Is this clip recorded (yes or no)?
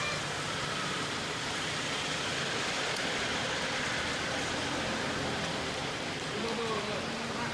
yes